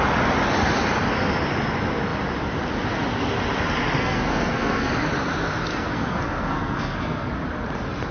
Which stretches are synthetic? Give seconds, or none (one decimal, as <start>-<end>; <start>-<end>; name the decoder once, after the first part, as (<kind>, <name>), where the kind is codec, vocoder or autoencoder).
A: 4.0-4.9 (codec, SNAC); 5.7-7.3